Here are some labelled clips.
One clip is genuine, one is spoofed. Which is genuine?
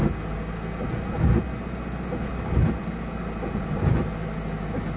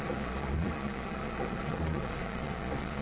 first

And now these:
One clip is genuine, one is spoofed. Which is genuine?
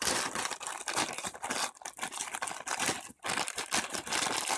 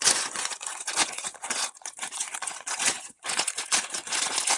first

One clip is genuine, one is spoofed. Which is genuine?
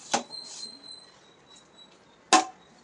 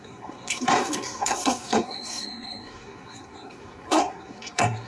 first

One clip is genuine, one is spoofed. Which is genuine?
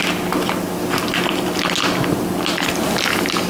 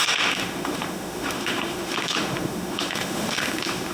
first